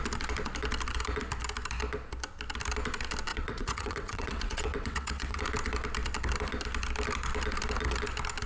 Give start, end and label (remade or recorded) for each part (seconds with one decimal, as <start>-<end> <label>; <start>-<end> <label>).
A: 0.0-3.3 recorded; 3.3-5.4 remade; 5.4-8.5 recorded